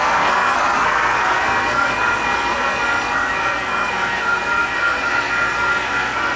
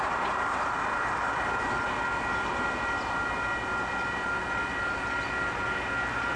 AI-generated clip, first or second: first